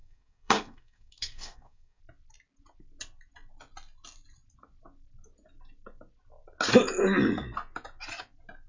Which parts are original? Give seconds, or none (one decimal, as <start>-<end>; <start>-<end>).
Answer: 2.0-8.7